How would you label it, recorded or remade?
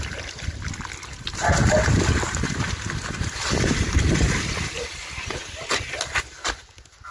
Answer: recorded